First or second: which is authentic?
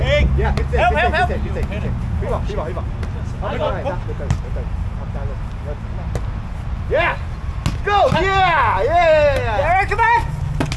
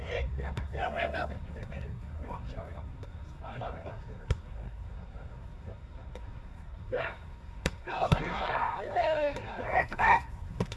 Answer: first